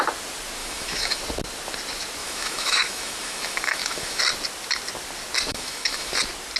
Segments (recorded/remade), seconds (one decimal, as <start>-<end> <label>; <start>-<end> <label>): 0.0-0.6 recorded; 0.6-1.2 remade; 1.2-2.2 recorded; 2.2-4.2 remade; 4.2-5.5 recorded; 5.5-6.1 remade; 6.1-6.6 recorded